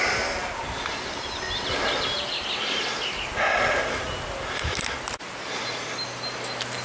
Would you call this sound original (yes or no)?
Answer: yes